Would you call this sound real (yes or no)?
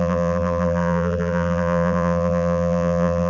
no